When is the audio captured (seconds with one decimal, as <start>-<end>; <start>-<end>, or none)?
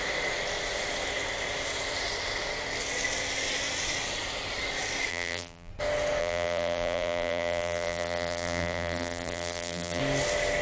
0.0-5.1; 5.7-6.2; 10.0-10.6